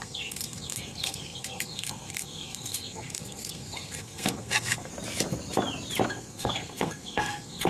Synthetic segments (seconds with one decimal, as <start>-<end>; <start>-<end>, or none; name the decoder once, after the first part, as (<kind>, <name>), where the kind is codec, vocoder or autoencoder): 0.0-4.9 (codec, SNAC); 6.1-7.7